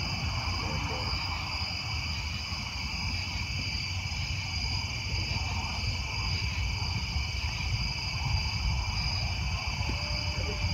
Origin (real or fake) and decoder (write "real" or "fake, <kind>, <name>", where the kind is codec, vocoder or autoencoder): real